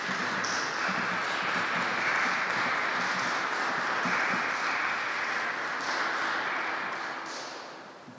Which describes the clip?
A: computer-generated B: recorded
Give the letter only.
B